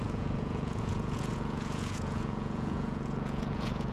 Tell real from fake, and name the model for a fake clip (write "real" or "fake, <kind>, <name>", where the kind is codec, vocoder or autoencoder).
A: fake, vocoder, Vocos